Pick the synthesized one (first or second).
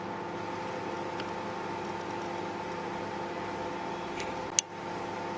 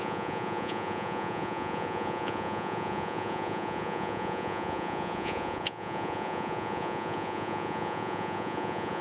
second